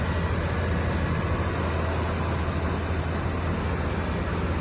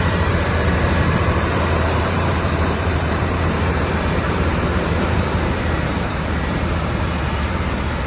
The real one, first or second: first